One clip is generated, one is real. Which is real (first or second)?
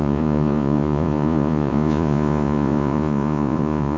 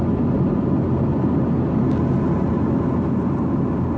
second